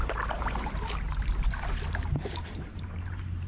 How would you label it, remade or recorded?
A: remade